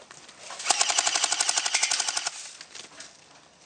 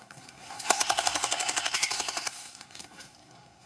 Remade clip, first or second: second